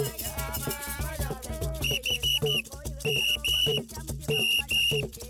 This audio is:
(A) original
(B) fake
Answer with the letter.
B